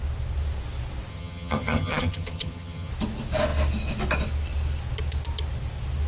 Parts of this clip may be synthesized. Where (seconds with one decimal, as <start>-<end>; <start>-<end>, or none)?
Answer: 1.1-2.9